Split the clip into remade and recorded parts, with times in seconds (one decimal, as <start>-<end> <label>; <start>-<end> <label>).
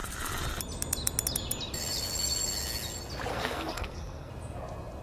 0.0-3.3 recorded; 3.3-4.3 remade; 4.3-5.0 recorded